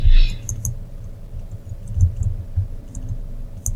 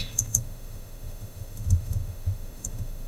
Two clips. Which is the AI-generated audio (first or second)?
second